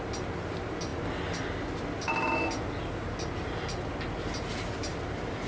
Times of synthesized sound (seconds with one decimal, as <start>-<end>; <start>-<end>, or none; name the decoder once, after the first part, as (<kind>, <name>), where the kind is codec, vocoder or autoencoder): none